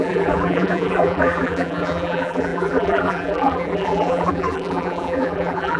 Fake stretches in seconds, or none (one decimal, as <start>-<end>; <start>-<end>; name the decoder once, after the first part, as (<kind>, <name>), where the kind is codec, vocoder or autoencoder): 0.0-5.8 (vocoder, BigVGAN v2)